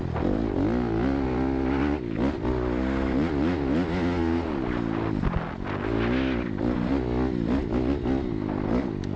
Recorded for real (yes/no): yes